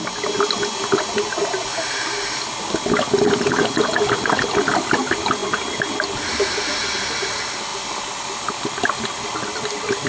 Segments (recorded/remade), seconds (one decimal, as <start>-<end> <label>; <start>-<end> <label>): 0.0-10.1 recorded